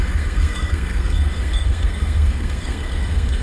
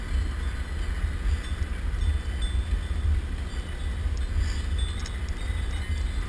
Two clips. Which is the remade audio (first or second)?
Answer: first